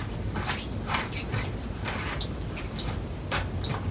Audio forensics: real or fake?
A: real